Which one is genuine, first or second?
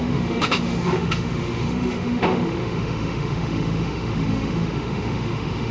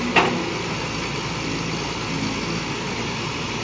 second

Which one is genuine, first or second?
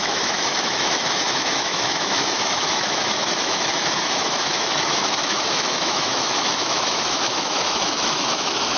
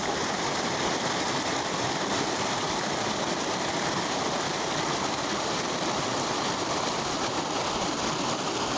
second